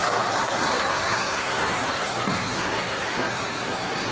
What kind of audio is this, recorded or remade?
remade